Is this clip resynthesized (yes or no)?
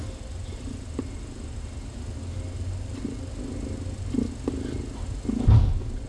no